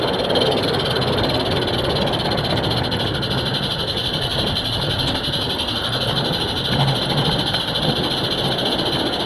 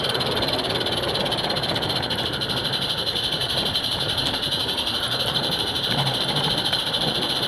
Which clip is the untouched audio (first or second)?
first